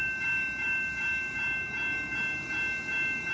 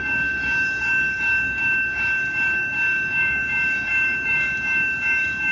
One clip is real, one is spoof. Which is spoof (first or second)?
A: second